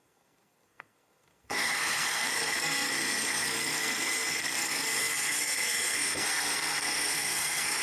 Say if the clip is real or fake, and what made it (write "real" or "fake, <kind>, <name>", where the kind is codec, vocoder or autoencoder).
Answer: fake, codec, SNAC